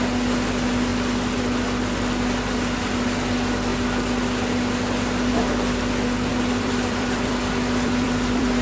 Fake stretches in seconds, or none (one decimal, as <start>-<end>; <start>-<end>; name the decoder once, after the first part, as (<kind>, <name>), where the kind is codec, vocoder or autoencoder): 6.3-8.6 (vocoder, BigVGAN v2)